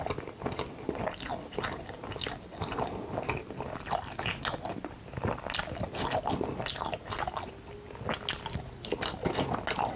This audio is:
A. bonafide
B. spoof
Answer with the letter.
A